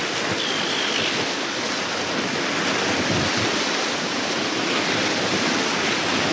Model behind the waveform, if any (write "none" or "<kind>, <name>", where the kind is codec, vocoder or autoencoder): none